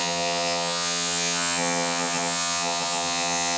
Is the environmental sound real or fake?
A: fake